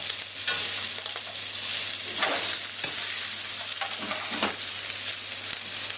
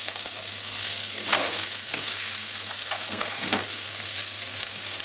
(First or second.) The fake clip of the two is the second